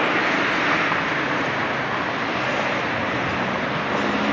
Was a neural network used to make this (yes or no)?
no